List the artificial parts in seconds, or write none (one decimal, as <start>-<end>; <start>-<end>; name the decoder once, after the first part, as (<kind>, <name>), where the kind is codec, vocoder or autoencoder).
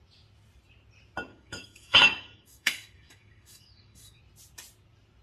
1.3-4.2 (codec, DAC)